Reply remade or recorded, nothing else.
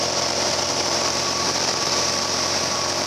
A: remade